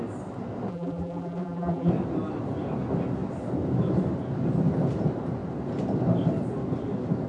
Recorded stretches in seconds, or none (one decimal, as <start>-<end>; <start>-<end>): 0.0-0.7; 1.9-7.3